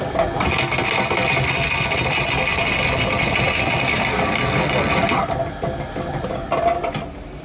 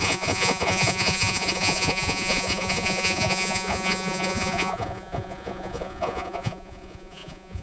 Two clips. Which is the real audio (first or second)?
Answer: first